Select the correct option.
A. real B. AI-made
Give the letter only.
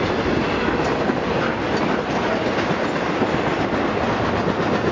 A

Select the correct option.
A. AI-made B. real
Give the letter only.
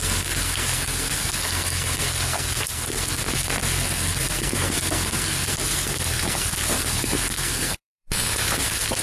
A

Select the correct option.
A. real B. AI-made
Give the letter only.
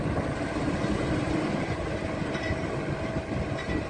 A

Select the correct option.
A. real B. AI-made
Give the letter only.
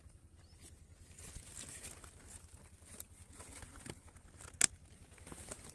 A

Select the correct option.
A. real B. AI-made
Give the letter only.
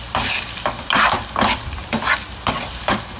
A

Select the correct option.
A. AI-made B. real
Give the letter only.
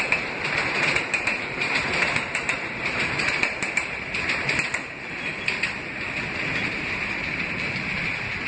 A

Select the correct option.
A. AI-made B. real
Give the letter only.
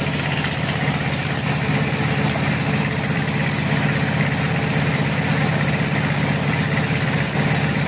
B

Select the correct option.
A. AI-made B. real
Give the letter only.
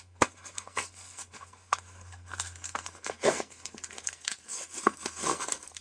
A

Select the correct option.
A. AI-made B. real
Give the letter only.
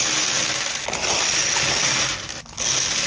B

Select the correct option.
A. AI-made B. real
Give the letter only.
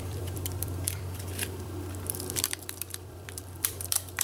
A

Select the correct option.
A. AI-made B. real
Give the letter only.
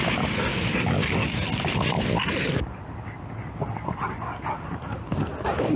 B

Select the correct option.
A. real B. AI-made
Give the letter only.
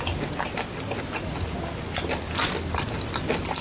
A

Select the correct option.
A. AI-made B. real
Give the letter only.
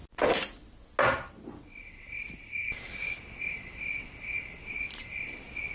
B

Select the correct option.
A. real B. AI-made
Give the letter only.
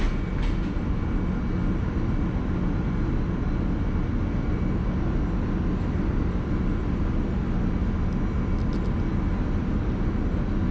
A